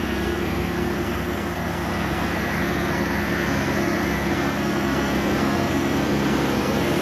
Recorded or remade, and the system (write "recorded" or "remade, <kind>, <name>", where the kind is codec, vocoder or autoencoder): remade, codec, SNAC